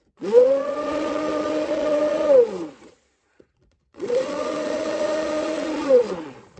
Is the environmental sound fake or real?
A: fake